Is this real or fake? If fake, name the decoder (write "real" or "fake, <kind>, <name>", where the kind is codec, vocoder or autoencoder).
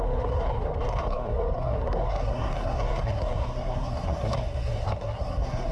fake, codec, SNAC